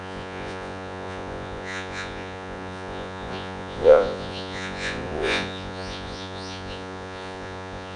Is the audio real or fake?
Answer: fake